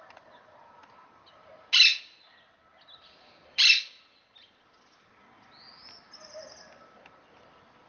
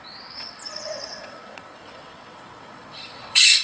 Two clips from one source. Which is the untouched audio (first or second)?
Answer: first